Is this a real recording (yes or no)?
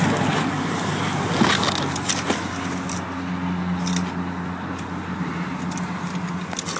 yes